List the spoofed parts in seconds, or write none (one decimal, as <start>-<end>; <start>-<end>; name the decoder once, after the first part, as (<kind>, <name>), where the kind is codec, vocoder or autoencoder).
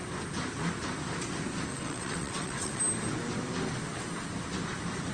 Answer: 1.7-2.8 (vocoder, WaveNeXt)